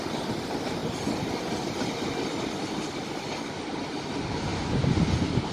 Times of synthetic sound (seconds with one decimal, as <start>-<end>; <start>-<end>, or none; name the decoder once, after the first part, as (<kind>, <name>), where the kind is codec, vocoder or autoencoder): 0.8-1.8 (vocoder, BigVGAN v2); 4.5-5.1